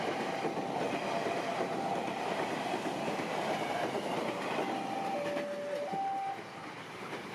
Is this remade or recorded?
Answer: recorded